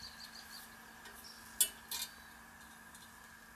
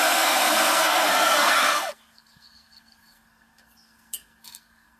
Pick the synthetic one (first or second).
second